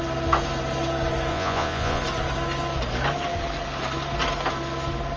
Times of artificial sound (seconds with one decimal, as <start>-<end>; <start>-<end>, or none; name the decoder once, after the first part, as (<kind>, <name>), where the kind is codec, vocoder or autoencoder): 1.3-2.0 (vocoder, Vocos)